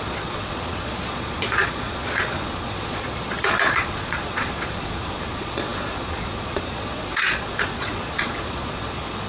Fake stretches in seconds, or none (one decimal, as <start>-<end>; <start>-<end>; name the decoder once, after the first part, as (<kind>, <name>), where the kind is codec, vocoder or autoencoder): 0.0-9.3 (vocoder, Vocos)